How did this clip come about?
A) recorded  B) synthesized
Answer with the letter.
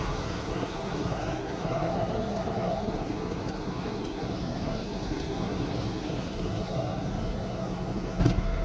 B